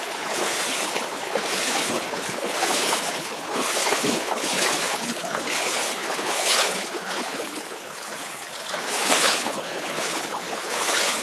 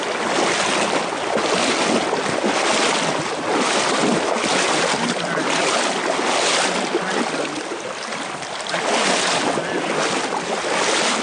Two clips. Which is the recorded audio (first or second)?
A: second